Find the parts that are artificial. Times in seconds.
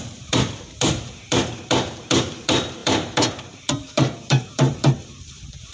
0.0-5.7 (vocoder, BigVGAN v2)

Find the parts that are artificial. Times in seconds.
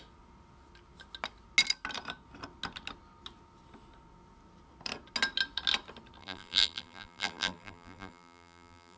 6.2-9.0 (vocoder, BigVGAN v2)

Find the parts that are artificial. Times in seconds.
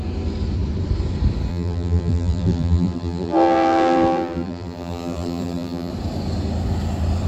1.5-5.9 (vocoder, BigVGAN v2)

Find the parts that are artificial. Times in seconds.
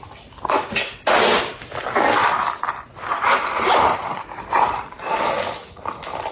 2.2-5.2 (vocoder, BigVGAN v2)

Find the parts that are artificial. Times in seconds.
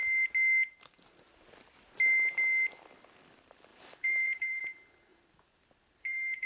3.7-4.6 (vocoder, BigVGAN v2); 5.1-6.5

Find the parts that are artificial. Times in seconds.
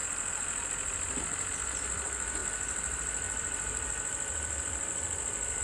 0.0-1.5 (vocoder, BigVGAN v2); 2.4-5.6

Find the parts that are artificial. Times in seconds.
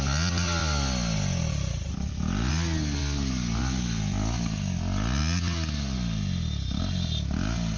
0.6-2.5 (vocoder, BigVGAN v2)